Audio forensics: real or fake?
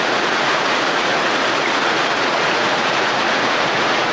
fake